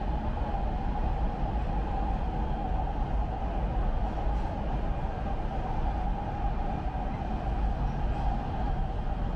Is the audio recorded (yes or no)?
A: yes